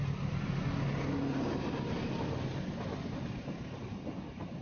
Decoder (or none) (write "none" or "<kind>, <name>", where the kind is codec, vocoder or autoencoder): none